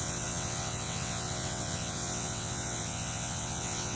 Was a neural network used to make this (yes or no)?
yes